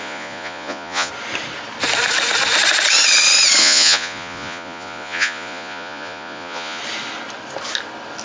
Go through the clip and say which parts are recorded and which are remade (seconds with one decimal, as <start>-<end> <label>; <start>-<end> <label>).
0.0-1.1 remade; 1.1-3.6 recorded; 3.6-6.8 remade; 6.8-8.2 recorded